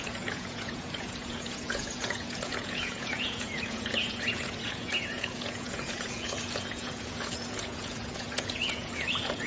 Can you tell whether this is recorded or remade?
remade